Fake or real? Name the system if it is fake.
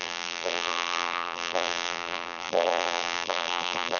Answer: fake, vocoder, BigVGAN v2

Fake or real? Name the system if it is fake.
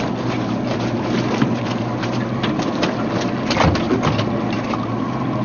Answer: real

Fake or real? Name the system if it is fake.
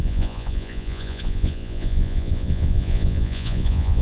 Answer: fake, vocoder, Vocos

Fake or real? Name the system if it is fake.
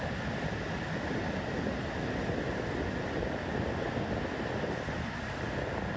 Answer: real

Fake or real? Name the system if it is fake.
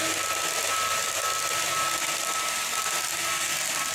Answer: real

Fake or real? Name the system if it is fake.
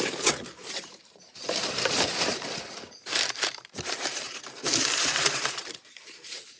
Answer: fake, vocoder, BigVGAN v2